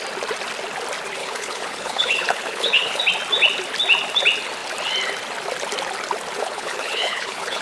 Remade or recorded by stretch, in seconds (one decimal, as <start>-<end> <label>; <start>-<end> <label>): 0.0-1.2 recorded; 1.2-3.0 remade; 3.0-6.4 recorded; 6.4-7.6 remade